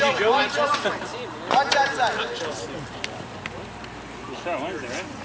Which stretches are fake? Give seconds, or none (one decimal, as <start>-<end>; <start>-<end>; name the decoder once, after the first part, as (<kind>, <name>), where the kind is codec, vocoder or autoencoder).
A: none